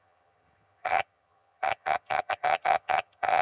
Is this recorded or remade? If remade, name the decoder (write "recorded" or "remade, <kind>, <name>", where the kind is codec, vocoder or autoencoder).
remade, vocoder, HiFi-GAN